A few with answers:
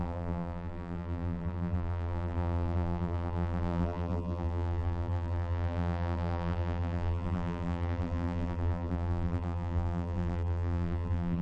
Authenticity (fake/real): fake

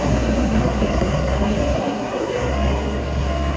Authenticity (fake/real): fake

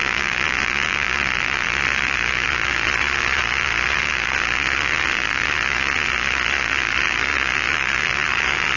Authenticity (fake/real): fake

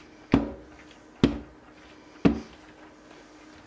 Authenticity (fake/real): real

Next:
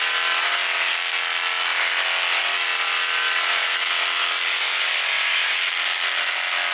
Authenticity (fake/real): real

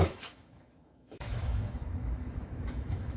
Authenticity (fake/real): fake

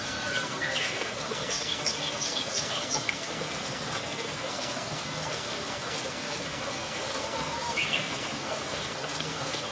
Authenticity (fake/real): fake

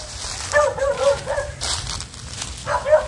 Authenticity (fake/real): real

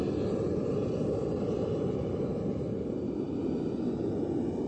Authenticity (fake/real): real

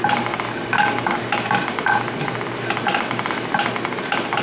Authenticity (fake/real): real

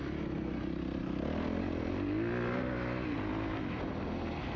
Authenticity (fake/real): real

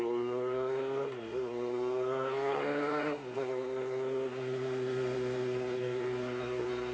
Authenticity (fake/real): fake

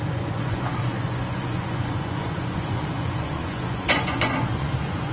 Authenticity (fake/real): fake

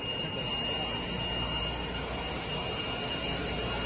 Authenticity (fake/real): real